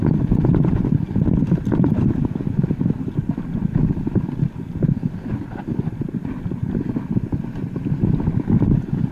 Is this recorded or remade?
recorded